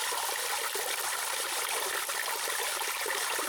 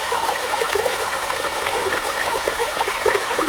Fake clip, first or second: second